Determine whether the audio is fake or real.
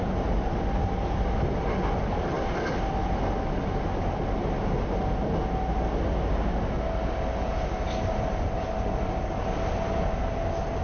real